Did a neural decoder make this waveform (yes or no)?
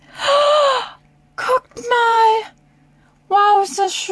yes